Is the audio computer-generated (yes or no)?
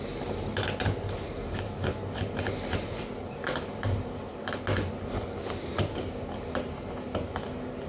no